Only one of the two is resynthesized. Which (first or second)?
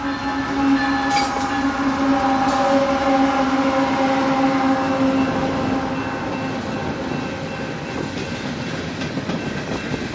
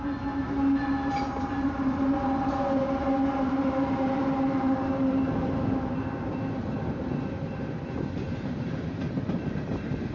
second